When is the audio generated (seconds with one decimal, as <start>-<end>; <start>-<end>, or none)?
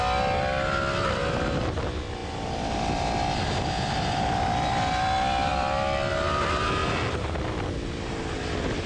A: none